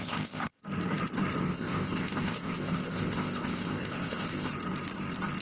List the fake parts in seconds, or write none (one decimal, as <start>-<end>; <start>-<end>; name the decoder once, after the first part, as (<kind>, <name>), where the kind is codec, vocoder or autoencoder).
0.0-0.6 (codec, ZipCodec); 1.4-4.5